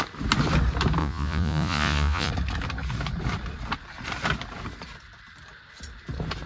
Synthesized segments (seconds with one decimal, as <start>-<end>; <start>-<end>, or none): 1.0-2.3